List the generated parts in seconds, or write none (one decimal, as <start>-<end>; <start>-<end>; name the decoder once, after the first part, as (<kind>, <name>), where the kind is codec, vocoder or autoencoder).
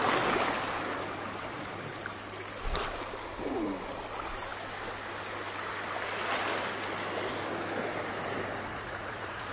8.7-9.5 (vocoder, Vocos)